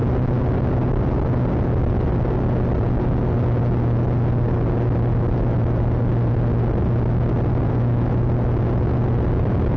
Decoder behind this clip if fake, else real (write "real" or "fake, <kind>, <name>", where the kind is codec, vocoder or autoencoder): real